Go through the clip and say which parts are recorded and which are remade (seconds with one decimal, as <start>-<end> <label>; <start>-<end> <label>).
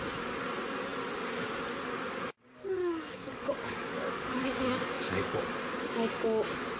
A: 0.0-2.8 recorded; 2.8-5.4 remade; 5.4-6.8 recorded